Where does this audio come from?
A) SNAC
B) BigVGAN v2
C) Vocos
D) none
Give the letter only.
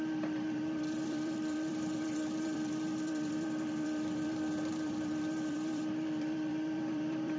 B